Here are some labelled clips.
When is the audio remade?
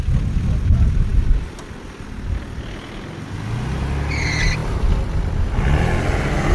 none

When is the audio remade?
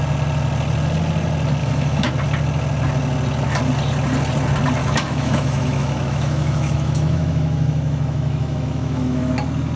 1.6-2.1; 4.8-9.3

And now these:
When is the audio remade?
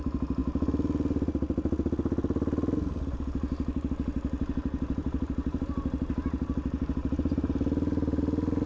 5.0-8.2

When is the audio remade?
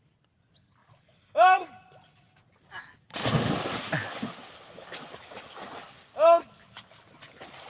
none